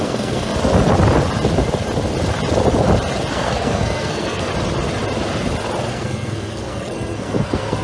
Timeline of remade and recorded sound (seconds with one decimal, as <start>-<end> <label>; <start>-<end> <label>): 0.0-0.5 remade; 0.5-3.3 recorded; 3.3-4.5 remade; 4.5-5.9 recorded; 5.9-7.8 remade